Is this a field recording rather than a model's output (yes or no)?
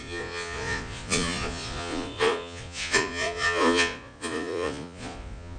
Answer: no